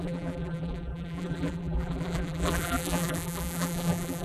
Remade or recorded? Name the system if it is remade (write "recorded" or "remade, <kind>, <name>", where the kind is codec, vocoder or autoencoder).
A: remade, vocoder, BigVGAN v2